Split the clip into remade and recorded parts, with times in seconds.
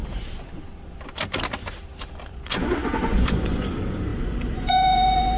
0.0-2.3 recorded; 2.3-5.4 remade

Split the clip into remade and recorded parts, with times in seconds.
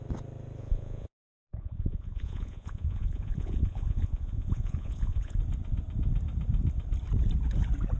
0.0-0.6 recorded; 0.6-5.4 remade; 5.4-8.0 recorded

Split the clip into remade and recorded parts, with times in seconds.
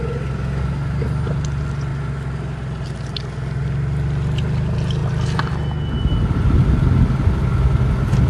0.0-8.3 recorded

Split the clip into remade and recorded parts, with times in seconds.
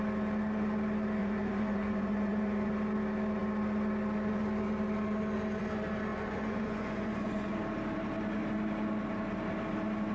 0.0-1.2 recorded; 1.2-2.7 remade; 2.7-6.1 recorded; 6.1-7.6 remade; 7.6-10.1 recorded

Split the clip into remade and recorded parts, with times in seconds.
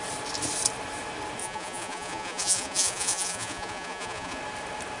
0.0-1.4 recorded; 1.4-4.4 remade; 4.4-5.0 recorded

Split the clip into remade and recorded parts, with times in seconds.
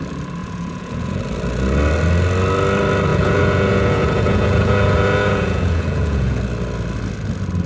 0.0-0.4 recorded; 0.4-1.2 remade; 1.2-3.1 recorded; 3.1-6.4 remade; 6.4-7.7 recorded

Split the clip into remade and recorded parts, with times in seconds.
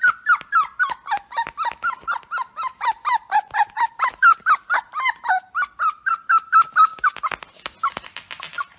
0.0-8.8 recorded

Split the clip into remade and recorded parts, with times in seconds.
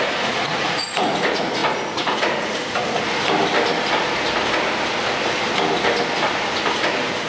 0.0-2.8 remade; 2.8-7.3 recorded